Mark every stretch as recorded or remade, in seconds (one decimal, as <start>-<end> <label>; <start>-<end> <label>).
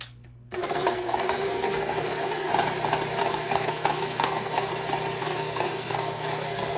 0.0-2.5 remade; 2.5-3.2 recorded; 3.2-4.7 remade; 4.7-5.2 recorded; 5.2-6.8 remade